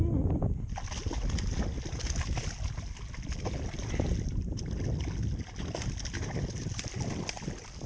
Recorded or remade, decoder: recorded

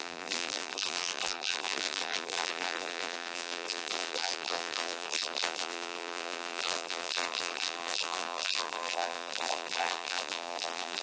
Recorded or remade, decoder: remade, vocoder, BigVGAN v2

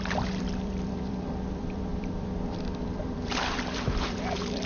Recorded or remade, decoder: remade, vocoder, BigVGAN v2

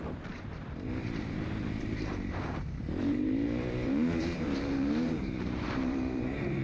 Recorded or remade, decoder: remade, vocoder, BigVGAN v2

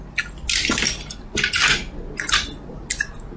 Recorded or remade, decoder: recorded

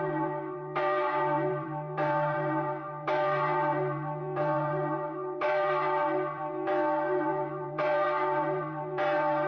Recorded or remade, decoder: remade, vocoder, BigVGAN v2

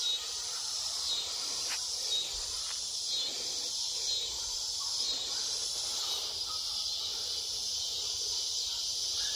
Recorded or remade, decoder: remade, vocoder, BigVGAN v2